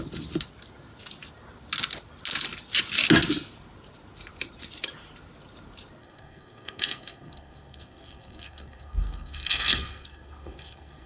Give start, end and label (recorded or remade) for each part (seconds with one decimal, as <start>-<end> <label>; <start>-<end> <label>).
0.0-6.0 recorded; 6.0-11.1 remade